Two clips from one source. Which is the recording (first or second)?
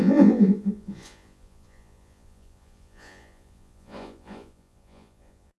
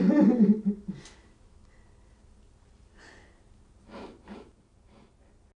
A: second